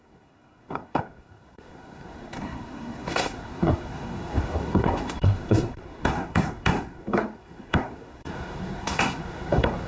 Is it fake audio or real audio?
fake